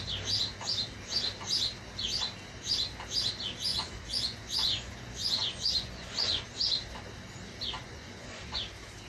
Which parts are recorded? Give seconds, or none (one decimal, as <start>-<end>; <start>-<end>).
0.0-3.7; 6.4-7.8; 8.6-9.1

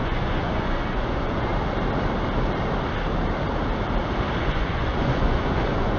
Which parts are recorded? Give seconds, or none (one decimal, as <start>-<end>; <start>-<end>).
1.5-4.4

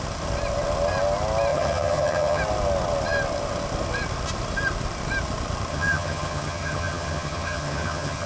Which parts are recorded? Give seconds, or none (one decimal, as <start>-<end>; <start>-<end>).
0.0-1.5; 2.4-5.7